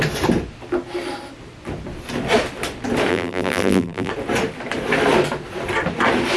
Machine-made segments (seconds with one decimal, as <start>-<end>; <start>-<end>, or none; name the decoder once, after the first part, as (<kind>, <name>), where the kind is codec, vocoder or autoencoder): 3.1-4.1 (vocoder, BigVGAN v2)